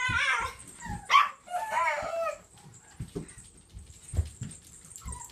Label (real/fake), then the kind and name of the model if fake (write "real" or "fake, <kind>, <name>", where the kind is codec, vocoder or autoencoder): real